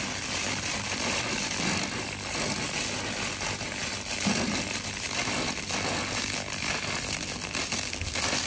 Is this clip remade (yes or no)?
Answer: no